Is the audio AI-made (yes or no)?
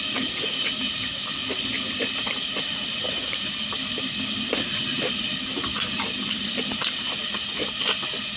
yes